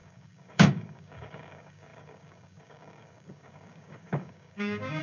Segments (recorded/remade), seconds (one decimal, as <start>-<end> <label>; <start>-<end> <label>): 0.0-5.0 remade